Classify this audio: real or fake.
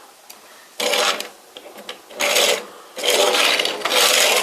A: real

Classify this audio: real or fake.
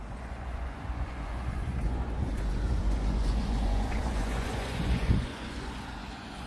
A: fake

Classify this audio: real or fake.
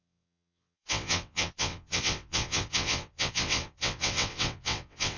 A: fake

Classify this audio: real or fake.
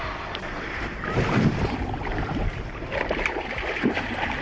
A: fake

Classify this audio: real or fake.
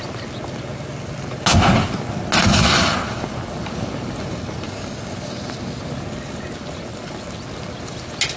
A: real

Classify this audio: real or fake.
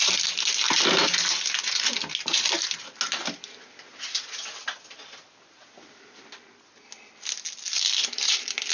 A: real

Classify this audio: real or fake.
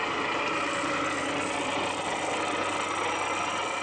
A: real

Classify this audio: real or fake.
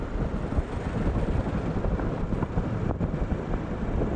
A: real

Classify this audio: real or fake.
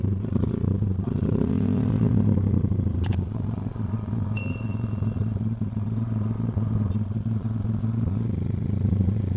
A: fake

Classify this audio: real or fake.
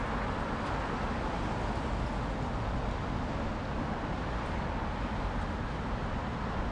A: real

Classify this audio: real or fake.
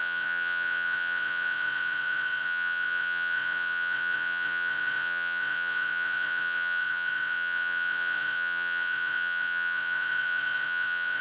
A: fake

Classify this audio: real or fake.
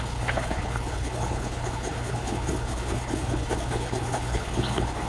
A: fake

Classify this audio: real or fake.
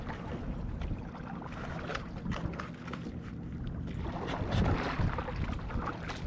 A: real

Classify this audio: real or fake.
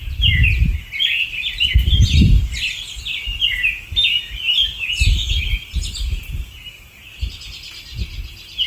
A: real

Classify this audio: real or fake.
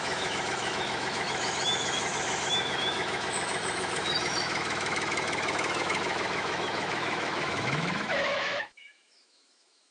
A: fake